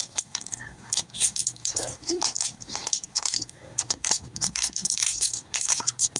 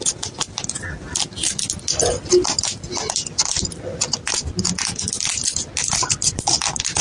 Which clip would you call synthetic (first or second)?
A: first